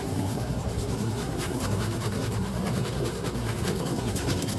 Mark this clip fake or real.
fake